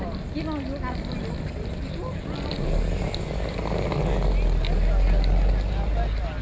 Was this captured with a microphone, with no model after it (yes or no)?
yes